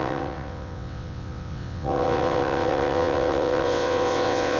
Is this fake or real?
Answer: fake